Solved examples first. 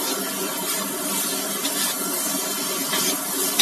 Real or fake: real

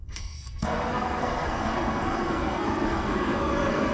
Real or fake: fake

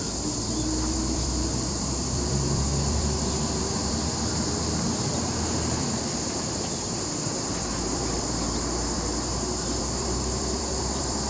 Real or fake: fake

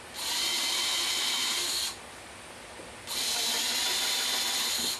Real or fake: real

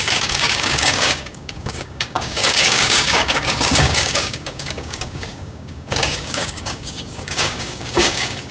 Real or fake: fake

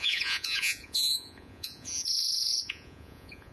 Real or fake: fake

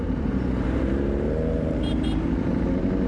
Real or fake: real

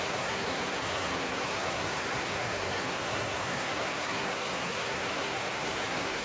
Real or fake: fake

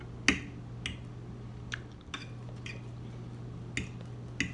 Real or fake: real